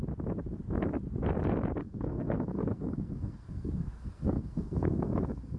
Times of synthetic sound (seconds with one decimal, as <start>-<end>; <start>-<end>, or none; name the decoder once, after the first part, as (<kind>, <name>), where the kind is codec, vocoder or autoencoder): 1.8-5.6 (codec, SNAC)